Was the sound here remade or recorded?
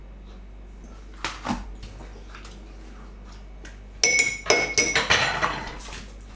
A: recorded